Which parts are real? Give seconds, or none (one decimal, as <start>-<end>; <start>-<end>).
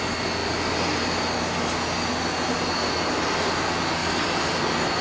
0.0-4.0; 4.6-5.0